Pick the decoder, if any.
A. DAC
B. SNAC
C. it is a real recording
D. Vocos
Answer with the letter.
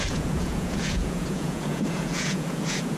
D